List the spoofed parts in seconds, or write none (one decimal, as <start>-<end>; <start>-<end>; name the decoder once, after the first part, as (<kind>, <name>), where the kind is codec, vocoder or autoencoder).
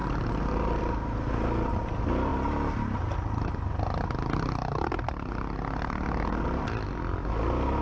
none